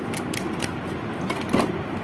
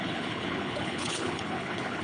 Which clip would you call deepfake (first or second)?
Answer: second